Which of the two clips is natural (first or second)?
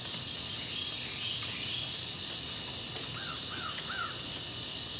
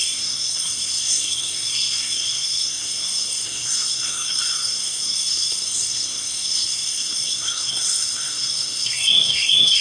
first